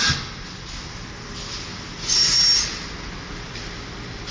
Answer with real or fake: real